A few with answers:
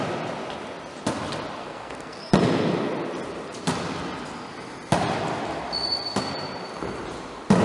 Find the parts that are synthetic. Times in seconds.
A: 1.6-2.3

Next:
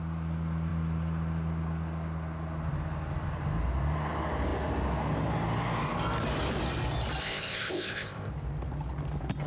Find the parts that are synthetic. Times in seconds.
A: 7.2-8.3

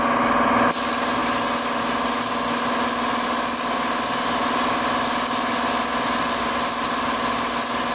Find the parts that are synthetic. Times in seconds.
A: none